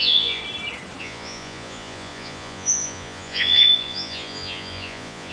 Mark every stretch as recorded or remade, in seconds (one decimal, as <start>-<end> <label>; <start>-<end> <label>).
0.0-0.4 remade; 0.4-1.0 recorded; 1.0-5.3 remade

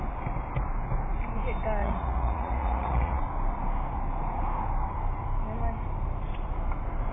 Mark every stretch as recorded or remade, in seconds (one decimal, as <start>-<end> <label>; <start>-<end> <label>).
0.0-1.8 recorded; 1.8-3.2 remade; 3.2-7.1 recorded

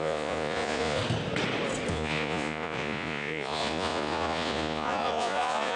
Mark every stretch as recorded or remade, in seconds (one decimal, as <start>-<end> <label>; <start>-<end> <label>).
0.0-1.0 remade; 1.0-1.9 recorded; 1.9-5.8 remade

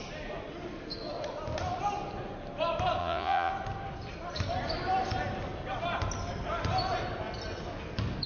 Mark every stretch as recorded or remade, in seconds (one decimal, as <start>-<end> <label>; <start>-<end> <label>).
0.0-3.0 recorded; 3.0-3.5 remade; 3.5-8.3 recorded

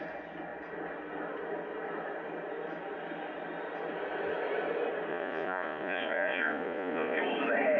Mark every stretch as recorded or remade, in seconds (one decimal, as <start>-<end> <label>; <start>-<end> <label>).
0.0-5.1 recorded; 5.1-7.2 remade; 7.2-7.8 recorded